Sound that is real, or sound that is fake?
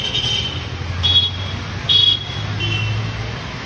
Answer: real